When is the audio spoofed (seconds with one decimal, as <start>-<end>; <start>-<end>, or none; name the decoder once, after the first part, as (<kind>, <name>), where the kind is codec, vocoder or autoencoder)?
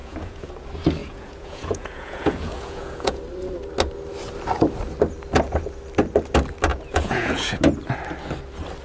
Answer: 0.0-0.5 (vocoder, Vocos); 1.0-3.2; 6.7-7.6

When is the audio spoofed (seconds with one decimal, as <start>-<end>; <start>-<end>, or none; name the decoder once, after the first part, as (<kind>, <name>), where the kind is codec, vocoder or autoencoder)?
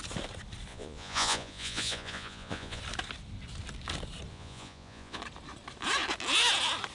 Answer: 0.7-2.8 (vocoder, Vocos); 4.3-5.2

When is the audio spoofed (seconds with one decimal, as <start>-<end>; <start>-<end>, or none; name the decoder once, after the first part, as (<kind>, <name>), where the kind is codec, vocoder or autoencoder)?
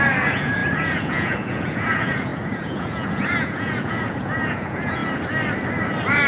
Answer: 0.0-5.0 (vocoder, Vocos)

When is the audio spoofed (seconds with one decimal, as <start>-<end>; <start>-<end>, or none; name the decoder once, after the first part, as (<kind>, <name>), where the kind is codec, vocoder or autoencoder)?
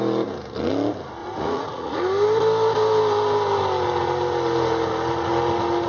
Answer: 1.2-2.0 (vocoder, Vocos)